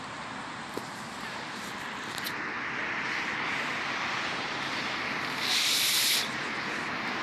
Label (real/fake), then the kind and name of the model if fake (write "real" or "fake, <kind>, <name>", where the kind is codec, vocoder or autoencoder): fake, vocoder, BigVGAN v2